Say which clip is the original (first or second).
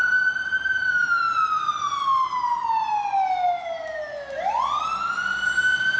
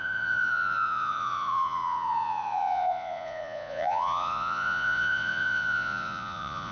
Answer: first